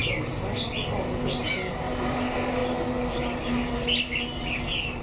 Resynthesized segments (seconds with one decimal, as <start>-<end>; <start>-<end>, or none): none

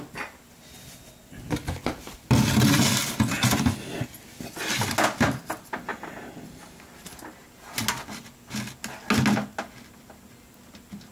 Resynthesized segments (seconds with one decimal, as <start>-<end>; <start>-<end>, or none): none

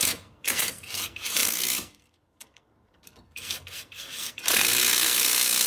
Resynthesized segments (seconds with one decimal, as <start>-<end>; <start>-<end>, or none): 0.0-5.7

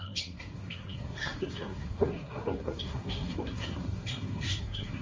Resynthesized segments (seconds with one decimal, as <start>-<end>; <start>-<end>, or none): 0.0-5.0

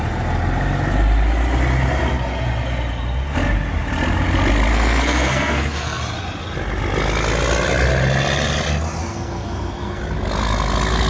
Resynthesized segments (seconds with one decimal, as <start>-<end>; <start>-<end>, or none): 4.7-6.0; 9.0-10.0

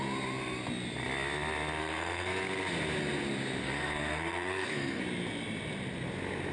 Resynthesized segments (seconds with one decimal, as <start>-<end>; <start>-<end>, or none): 1.8-2.4; 3.6-5.0